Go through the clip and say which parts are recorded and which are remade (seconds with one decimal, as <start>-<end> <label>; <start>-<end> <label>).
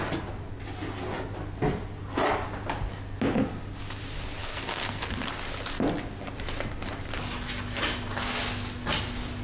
0.0-4.4 recorded; 4.4-5.0 remade; 5.0-9.4 recorded